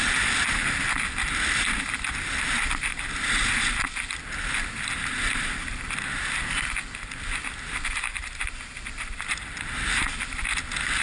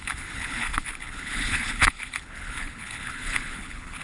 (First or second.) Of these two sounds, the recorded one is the first